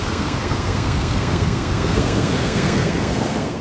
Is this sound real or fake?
fake